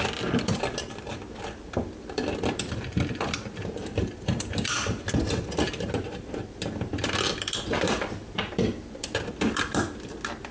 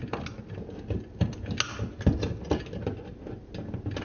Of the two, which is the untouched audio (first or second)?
second